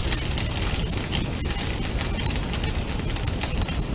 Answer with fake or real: real